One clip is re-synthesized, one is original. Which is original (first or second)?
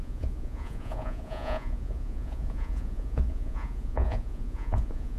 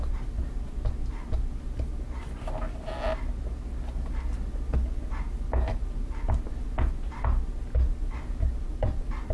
second